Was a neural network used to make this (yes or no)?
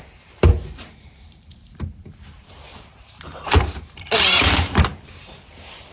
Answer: yes